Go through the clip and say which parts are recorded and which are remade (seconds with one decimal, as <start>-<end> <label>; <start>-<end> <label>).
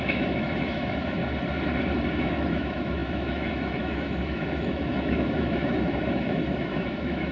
0.0-1.2 remade; 1.2-2.2 recorded; 2.2-7.3 remade